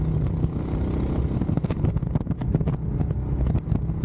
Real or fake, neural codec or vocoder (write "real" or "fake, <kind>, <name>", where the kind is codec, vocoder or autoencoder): real